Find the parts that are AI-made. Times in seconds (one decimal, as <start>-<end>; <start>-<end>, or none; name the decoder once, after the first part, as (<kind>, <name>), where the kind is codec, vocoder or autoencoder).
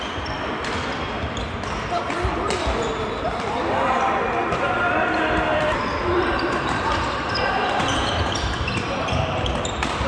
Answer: 5.5-8.9 (vocoder, BigVGAN v2)